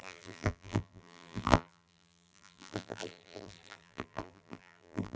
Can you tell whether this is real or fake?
fake